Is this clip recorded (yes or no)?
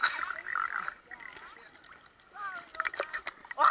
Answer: yes